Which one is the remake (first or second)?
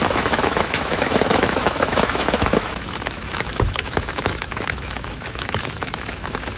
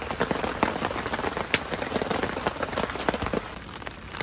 first